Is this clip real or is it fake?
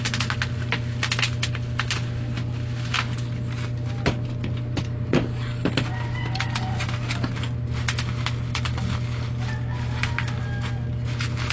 real